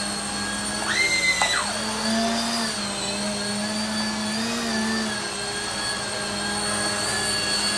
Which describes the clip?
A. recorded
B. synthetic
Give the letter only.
A